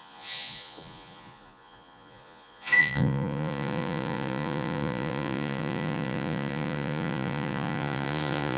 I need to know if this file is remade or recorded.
remade